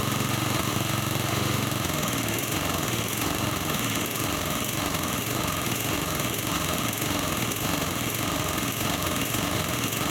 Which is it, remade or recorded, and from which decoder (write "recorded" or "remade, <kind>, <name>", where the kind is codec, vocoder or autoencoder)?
remade, autoencoder, DAC-VAE